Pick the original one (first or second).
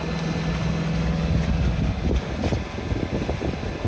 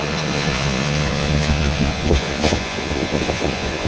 first